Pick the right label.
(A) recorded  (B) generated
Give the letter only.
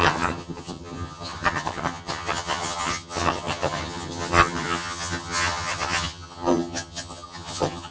B